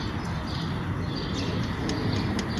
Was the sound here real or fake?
real